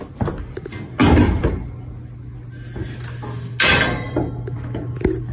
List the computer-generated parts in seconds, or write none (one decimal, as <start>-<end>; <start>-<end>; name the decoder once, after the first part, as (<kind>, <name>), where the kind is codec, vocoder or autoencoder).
none